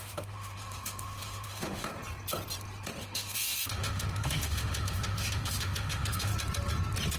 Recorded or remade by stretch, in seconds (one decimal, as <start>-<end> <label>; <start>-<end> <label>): 0.0-1.9 remade; 1.9-3.0 recorded; 3.0-6.3 remade; 6.3-7.2 recorded